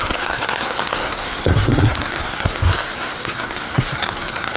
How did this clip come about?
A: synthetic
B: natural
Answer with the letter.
A